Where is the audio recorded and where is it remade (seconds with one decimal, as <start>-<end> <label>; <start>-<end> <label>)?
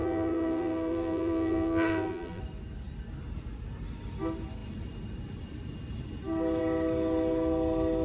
0.0-2.4 remade; 2.4-8.0 recorded